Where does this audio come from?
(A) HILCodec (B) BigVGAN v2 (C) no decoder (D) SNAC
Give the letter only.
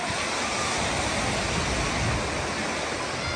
C